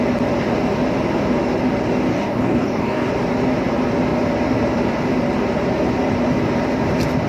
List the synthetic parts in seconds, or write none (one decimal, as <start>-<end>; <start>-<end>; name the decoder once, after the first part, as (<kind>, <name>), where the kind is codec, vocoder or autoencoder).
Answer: 2.1-3.1 (codec, DAC)